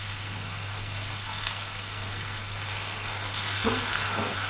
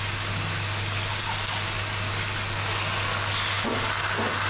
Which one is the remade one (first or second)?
first